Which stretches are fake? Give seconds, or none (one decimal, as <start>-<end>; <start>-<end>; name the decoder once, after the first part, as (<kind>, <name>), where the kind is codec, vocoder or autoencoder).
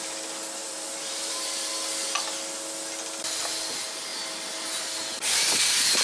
0.6-1.7 (vocoder, BigVGAN v2)